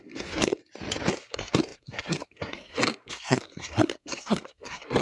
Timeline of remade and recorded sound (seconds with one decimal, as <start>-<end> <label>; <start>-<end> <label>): 0.0-0.6 remade; 0.6-1.1 recorded; 1.1-5.0 remade